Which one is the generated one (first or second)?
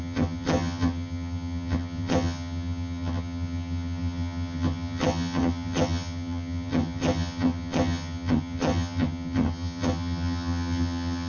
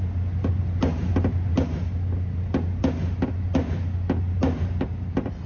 first